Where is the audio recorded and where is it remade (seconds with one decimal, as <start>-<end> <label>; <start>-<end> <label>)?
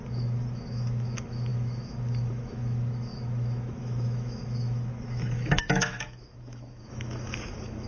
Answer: 0.0-7.9 remade